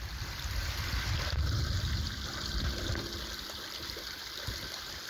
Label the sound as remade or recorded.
remade